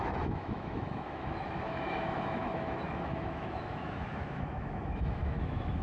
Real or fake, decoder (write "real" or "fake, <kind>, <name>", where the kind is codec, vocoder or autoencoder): fake, autoencoder, DAC-VAE